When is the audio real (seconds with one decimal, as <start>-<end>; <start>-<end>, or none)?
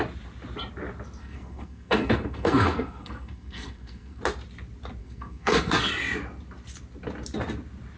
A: 0.0-1.2; 4.2-5.0; 5.9-8.0